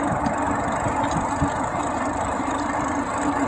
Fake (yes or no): no